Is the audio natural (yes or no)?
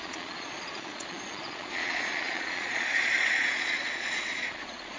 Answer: no